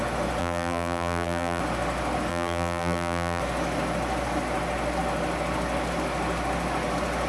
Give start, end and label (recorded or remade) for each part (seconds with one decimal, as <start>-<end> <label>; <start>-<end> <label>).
0.0-0.4 recorded; 0.4-1.6 remade; 1.6-2.3 recorded; 2.3-3.4 remade; 3.4-7.3 recorded